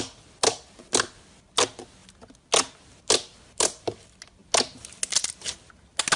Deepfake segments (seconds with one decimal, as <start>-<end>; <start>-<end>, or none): none